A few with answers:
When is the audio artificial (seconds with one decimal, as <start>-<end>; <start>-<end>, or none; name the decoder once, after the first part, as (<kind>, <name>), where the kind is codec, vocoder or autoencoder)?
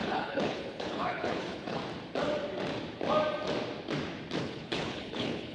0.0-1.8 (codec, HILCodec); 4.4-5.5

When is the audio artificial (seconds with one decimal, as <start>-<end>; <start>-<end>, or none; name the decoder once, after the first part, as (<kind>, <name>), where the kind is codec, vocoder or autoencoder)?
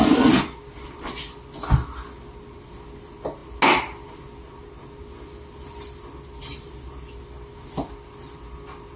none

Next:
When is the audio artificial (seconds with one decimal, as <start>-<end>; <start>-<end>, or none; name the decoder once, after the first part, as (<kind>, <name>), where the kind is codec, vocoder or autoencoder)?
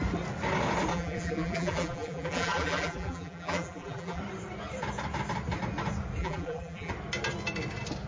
0.9-4.2 (vocoder, BigVGAN v2); 6.2-6.9